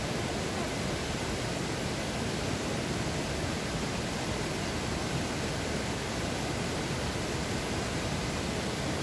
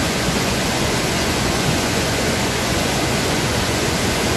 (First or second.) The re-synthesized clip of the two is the second